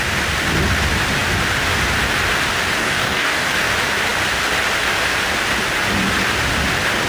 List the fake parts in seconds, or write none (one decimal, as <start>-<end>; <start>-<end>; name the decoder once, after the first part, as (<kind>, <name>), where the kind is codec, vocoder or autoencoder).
2.8-3.5 (codec, DAC)